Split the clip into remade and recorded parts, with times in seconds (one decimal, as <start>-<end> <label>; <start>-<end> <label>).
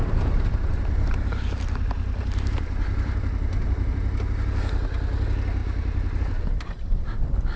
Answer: 0.0-3.9 remade; 3.9-5.6 recorded; 5.6-6.2 remade; 6.2-7.6 recorded